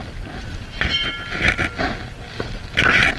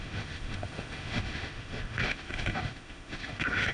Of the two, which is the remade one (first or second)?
second